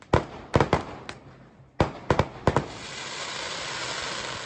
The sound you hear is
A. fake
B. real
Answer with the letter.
B